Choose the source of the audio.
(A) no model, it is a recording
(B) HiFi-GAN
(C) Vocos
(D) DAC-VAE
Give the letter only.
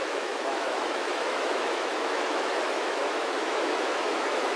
D